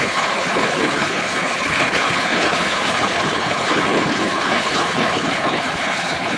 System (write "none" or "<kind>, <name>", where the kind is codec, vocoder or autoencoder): codec, HILCodec